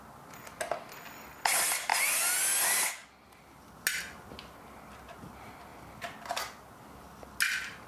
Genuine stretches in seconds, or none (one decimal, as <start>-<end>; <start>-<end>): 0.0-7.9